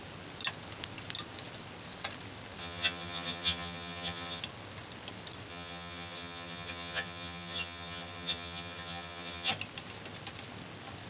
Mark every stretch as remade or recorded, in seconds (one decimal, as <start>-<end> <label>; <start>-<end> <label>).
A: 0.0-2.6 recorded; 2.6-4.4 remade; 4.4-5.5 recorded; 5.5-9.5 remade; 9.5-11.1 recorded